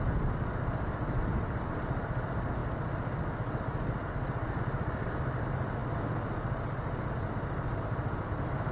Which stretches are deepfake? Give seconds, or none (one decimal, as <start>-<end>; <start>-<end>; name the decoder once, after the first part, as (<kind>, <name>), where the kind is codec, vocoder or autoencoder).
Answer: none